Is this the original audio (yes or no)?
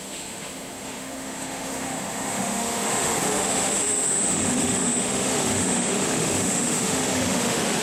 no